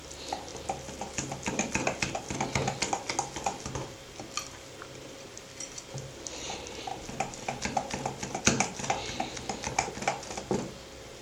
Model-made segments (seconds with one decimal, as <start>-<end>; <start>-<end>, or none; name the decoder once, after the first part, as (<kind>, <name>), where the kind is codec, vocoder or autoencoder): none